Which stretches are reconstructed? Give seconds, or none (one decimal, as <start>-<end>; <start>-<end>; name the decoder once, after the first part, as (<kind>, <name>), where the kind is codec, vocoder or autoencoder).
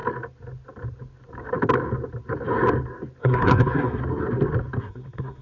3.2-4.0 (codec, SNAC); 4.8-5.4